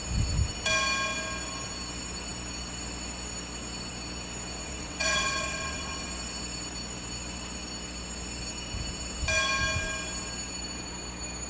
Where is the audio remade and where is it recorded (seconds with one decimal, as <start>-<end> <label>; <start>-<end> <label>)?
0.0-4.6 recorded; 4.6-6.1 remade; 6.1-11.5 recorded